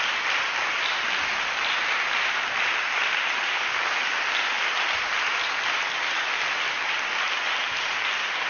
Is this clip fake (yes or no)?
no